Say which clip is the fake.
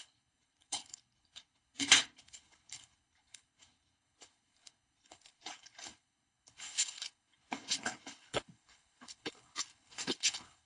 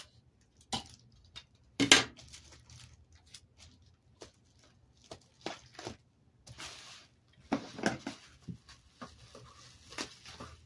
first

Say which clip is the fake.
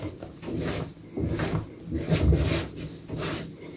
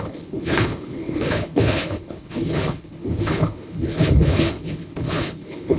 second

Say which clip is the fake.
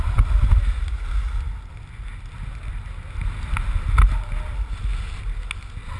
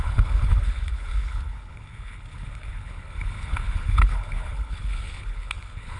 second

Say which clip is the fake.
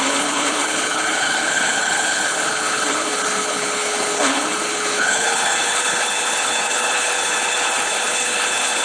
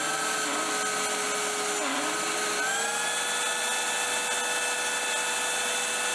first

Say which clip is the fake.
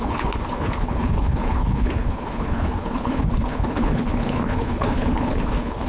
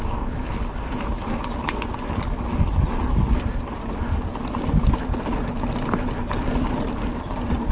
first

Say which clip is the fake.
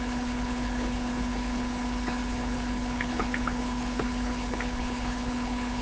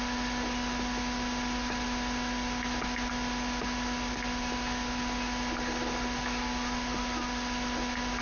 first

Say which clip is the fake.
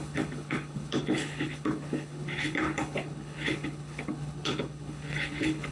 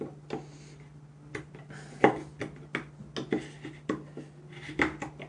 first